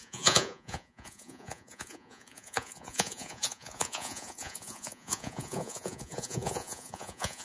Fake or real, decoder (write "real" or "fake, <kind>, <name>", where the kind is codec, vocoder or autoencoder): fake, vocoder, Vocos